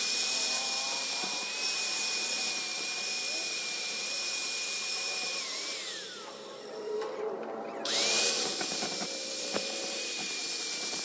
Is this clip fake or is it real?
fake